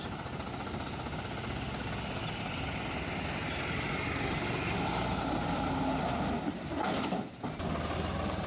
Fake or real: real